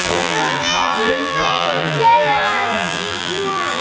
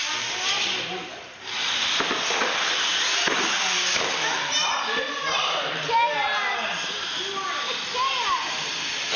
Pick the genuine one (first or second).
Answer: second